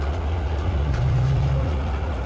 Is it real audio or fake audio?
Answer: fake